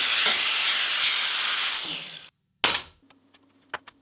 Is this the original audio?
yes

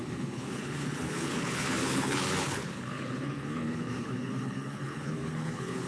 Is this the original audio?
no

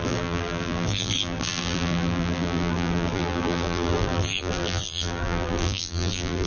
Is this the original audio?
no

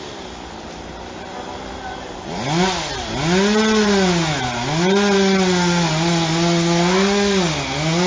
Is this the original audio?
yes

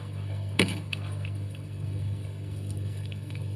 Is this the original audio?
no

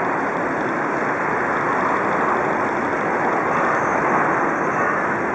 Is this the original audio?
yes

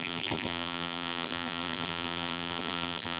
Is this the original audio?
no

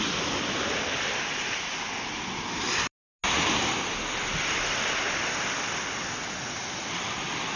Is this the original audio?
yes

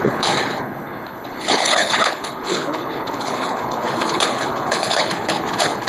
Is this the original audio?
no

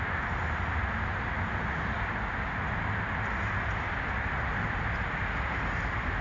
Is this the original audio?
yes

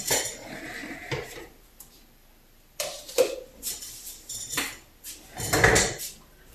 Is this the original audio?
no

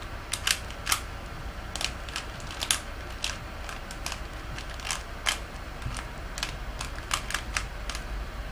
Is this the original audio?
yes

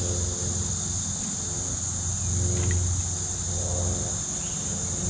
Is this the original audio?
yes